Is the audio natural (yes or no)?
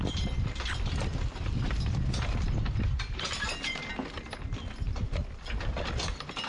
yes